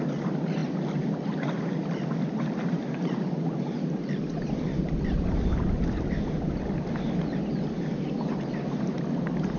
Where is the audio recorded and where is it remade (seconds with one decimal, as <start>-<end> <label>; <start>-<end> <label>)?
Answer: 0.0-9.6 recorded